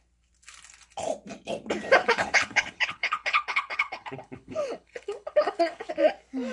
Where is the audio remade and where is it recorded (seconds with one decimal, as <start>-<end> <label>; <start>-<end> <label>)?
0.0-2.0 recorded; 2.0-5.9 remade; 5.9-6.5 recorded